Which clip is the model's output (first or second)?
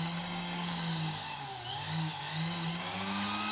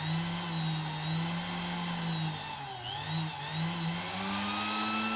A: first